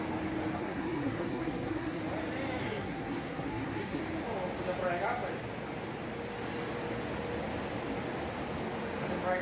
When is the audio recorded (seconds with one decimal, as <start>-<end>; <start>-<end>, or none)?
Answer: 0.0-0.6; 2.0-2.6; 4.0-9.4